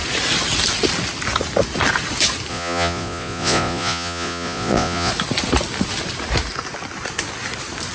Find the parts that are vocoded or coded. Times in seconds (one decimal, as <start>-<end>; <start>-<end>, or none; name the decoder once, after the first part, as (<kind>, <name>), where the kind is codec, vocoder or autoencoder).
2.5-5.1 (vocoder, Vocos)